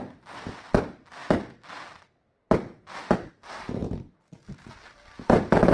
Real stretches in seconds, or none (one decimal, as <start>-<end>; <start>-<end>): 0.0-5.7